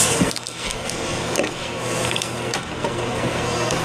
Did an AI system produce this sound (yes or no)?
yes